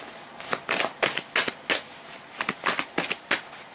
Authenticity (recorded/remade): recorded